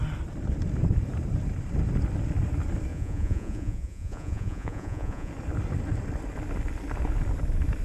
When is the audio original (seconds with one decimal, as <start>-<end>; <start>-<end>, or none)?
0.0-2.9; 5.3-7.8